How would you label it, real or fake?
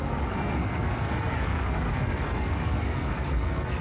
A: fake